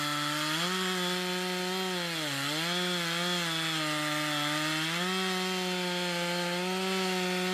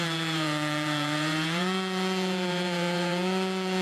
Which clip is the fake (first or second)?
second